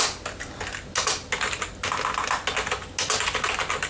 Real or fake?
real